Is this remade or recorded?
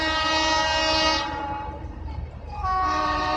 remade